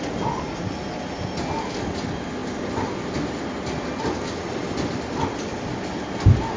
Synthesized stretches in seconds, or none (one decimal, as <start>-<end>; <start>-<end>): none